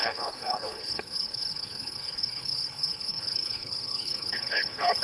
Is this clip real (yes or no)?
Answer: no